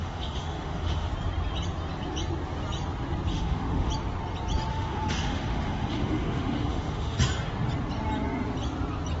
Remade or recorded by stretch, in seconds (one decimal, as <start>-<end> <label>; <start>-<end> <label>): 0.0-1.1 remade; 1.1-3.3 recorded; 3.3-3.9 remade; 3.9-4.7 recorded; 4.7-7.2 remade; 7.2-9.2 recorded